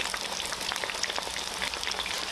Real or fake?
real